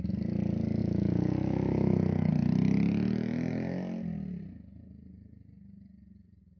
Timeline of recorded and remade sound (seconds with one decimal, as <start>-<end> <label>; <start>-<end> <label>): 0.0-0.8 recorded; 0.8-2.3 remade; 2.3-6.6 recorded